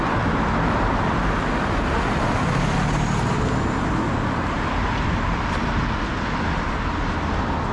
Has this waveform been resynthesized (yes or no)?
no